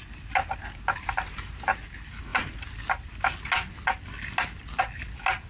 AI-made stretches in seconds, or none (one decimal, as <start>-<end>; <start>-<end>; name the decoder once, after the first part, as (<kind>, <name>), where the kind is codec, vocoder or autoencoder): none